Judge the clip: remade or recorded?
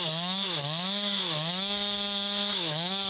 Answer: remade